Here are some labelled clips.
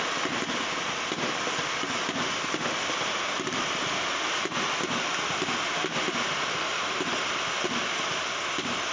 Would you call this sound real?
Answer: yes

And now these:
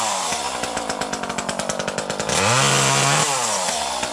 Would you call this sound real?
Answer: yes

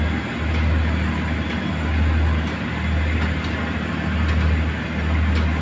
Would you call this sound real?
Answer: yes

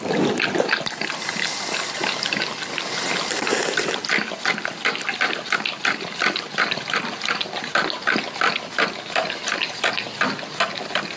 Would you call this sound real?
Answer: yes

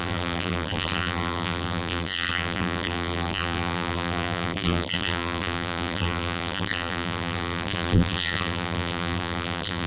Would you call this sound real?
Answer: no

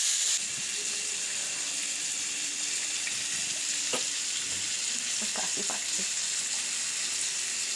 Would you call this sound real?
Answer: yes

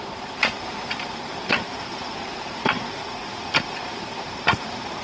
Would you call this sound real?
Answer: no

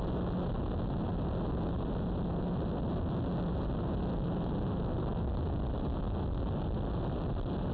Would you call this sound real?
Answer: yes